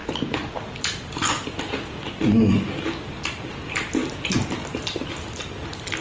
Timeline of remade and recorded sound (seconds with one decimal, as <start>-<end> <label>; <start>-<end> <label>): 0.0-6.0 recorded